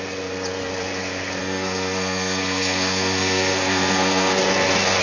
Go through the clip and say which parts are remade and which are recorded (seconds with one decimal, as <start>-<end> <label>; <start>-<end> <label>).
0.0-1.4 recorded; 1.4-4.4 remade; 4.4-5.0 recorded